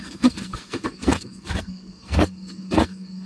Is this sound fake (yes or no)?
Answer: yes